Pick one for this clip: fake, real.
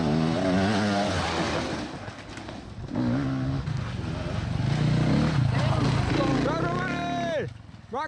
real